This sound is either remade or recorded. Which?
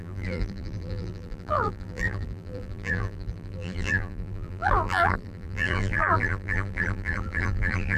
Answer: remade